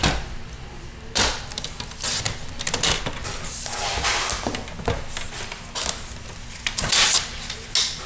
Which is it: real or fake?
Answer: real